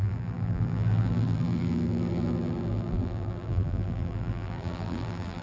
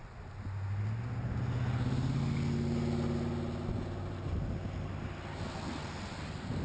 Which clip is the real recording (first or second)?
second